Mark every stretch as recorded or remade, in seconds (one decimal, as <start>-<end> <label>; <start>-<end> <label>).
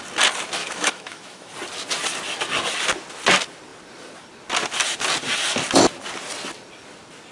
0.0-0.6 recorded; 0.6-1.5 remade; 1.5-7.3 recorded